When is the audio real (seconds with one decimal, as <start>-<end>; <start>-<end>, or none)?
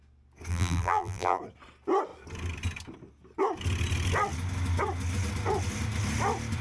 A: 0.0-0.5; 1.4-6.6